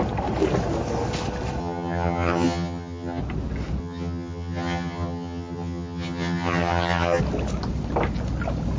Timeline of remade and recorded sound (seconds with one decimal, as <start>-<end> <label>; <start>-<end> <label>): 0.0-1.6 recorded; 1.6-3.2 remade; 3.2-3.8 recorded; 3.8-7.2 remade; 7.2-8.8 recorded